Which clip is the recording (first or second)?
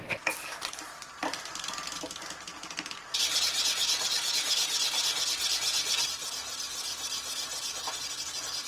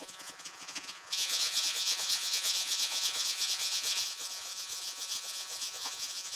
first